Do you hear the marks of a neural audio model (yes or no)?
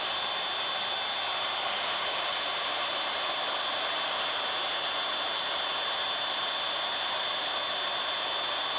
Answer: no